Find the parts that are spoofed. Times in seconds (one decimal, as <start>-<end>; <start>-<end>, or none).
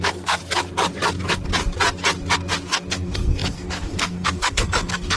0.0-0.4; 2.9-5.2